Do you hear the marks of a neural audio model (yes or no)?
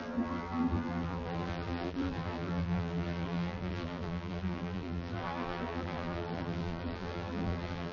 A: yes